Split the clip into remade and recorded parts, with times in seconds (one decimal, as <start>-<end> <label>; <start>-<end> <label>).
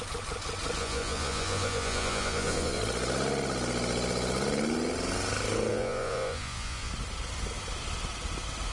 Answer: 0.0-0.8 recorded; 0.8-2.8 remade; 2.8-5.7 recorded; 5.7-6.9 remade; 6.9-8.7 recorded